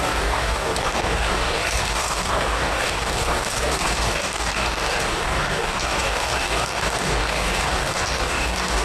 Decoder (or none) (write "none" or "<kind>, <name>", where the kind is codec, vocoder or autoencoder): codec, DAC